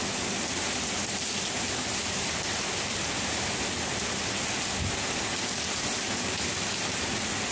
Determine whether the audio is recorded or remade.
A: recorded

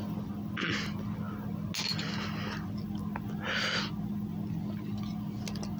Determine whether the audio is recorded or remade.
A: recorded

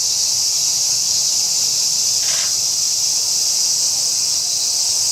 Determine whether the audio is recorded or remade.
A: recorded